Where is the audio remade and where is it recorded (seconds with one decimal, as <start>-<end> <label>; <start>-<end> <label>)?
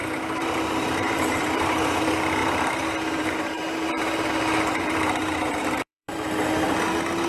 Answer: 0.0-2.0 remade; 2.0-2.4 recorded; 2.4-4.3 remade; 4.3-4.7 recorded; 4.7-6.5 remade; 6.5-7.3 recorded